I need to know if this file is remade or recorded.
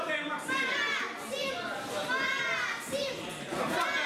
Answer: recorded